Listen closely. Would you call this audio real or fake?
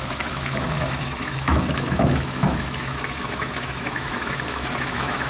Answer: fake